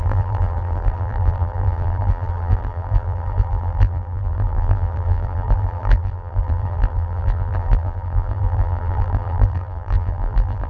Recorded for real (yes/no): no